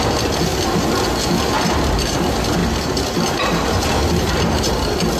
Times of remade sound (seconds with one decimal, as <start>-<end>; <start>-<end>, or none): none